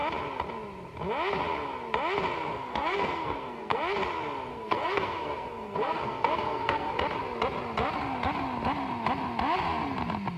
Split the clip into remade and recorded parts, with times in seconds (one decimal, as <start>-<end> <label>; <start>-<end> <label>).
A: 0.0-2.5 recorded; 2.5-3.8 remade; 3.8-4.5 recorded; 4.5-6.9 remade; 6.9-10.4 recorded

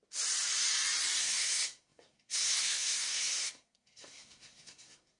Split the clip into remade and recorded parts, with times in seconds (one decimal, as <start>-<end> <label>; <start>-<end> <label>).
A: 0.0-1.2 recorded; 1.2-5.2 remade

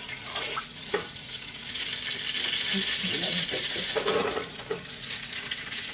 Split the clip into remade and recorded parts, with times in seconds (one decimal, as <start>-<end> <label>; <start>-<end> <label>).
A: 0.0-1.9 remade; 1.9-3.0 recorded; 3.0-5.9 remade

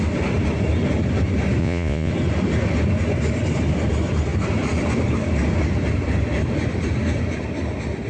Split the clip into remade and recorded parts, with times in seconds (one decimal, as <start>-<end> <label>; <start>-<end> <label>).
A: 0.0-1.6 recorded; 1.6-2.1 remade; 2.1-8.1 recorded